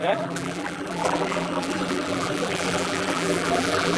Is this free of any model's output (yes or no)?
no